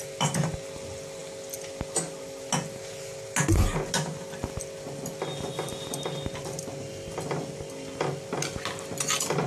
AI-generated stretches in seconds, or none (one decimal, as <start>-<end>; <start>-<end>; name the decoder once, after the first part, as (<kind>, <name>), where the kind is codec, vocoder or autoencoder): none